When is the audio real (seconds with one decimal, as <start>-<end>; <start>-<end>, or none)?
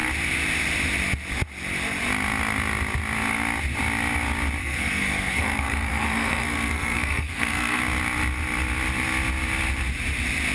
0.0-4.6; 7.8-10.5